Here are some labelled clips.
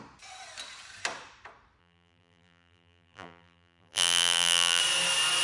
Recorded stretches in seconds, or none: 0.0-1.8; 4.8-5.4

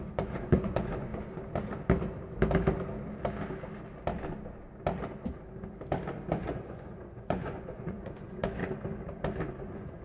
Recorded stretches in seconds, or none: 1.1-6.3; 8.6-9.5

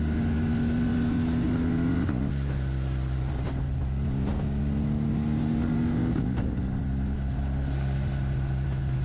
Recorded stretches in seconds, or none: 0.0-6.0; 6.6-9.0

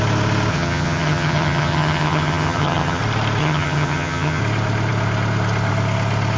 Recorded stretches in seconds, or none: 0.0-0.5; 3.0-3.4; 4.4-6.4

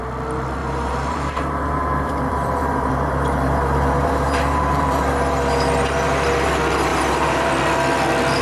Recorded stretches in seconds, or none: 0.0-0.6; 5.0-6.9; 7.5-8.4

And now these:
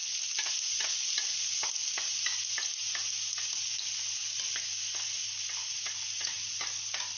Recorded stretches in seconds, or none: 0.0-7.2